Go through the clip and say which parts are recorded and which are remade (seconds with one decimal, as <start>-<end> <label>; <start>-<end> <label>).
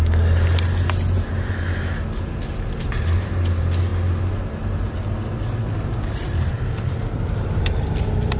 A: 0.0-8.4 recorded